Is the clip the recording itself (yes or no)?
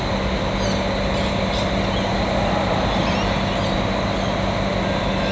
yes